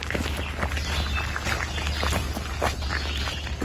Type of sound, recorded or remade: recorded